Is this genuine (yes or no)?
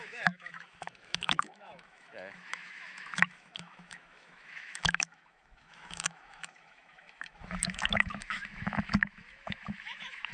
no